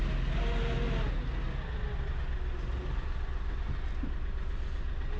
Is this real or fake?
real